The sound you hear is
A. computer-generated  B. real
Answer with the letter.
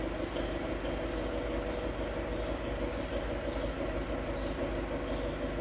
B